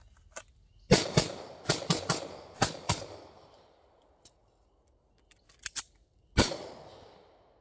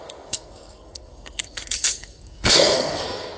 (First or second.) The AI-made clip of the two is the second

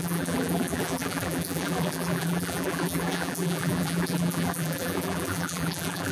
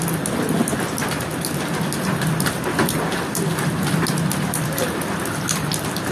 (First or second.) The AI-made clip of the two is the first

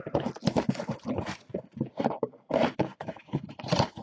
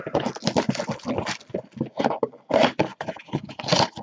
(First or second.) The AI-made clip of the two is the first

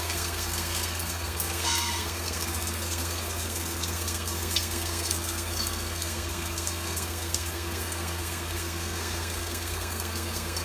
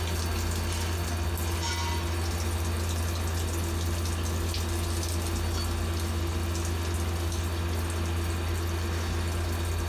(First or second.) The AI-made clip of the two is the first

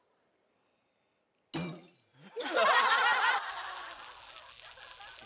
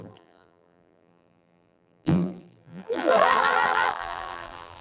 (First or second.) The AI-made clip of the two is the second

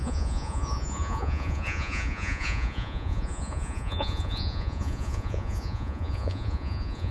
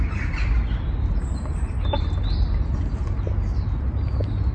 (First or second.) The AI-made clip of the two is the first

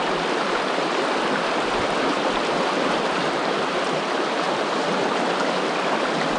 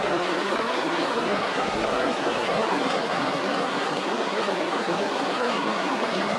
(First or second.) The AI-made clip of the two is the second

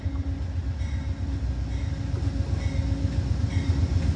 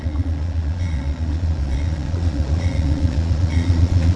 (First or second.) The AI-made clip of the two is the second